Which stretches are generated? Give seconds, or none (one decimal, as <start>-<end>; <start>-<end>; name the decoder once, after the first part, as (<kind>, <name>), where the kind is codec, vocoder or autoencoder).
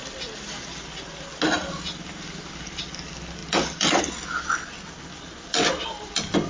none